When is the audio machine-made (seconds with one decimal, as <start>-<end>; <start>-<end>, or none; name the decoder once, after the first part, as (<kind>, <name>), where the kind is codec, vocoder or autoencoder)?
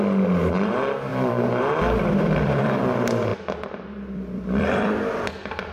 1.1-2.8 (vocoder, BigVGAN v2); 3.3-5.7